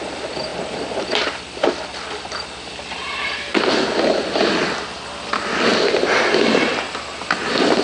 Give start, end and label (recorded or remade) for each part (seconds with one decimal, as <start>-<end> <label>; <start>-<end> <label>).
0.0-0.5 recorded; 0.5-3.7 remade; 3.7-7.8 recorded